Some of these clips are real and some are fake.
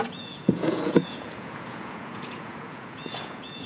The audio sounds fake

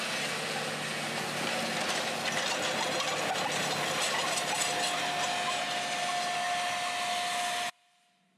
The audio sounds real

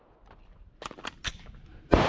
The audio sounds real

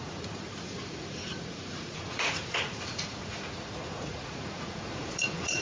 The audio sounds fake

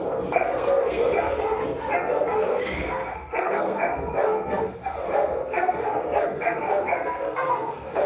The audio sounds fake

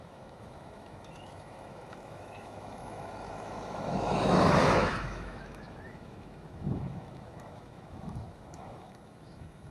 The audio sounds fake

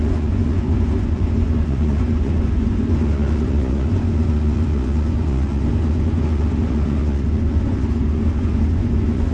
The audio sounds fake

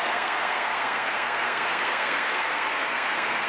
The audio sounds fake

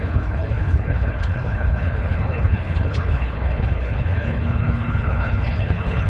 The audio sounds fake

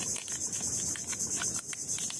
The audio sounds real